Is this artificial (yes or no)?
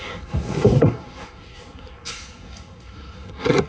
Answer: yes